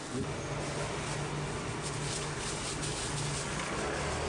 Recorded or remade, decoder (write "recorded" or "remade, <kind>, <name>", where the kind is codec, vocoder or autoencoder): recorded